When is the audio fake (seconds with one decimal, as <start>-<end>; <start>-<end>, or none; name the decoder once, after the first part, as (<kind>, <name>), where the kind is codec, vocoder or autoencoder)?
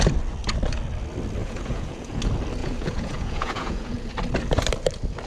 1.4-2.2 (vocoder, Vocos); 2.6-4.1